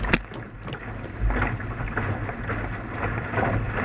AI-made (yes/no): no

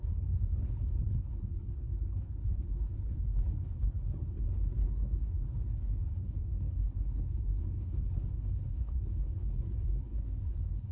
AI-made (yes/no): yes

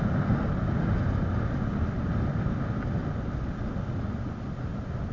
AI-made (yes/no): no